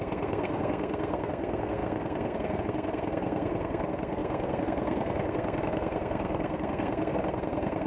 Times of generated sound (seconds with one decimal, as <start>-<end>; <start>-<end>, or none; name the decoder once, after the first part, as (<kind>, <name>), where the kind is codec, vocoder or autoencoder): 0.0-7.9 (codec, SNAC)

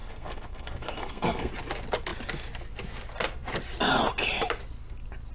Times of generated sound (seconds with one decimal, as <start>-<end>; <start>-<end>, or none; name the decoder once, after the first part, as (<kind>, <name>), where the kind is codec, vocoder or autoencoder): 0.0-1.5 (codec, SNAC)

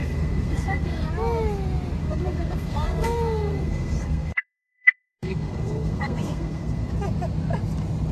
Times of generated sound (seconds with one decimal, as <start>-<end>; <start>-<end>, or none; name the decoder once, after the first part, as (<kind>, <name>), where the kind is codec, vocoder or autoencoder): 0.0-1.0 (codec, SNAC); 2.0-6.9

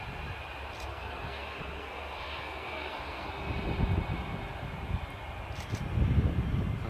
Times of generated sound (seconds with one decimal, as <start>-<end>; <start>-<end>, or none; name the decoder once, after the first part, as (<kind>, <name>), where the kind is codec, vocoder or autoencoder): 0.9-3.3 (codec, SNAC)

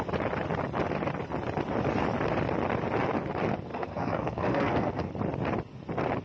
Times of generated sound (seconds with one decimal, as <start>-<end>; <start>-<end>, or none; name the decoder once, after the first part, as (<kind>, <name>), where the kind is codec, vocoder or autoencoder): 3.7-5.1 (codec, SNAC)

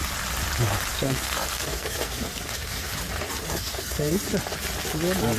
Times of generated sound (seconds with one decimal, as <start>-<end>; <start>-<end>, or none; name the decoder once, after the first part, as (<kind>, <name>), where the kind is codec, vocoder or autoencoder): 0.9-2.9 (codec, SNAC); 3.4-4.2

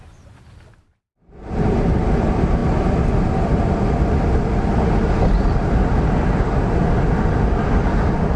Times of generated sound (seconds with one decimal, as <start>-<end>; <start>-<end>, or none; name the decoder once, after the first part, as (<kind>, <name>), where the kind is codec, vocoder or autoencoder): none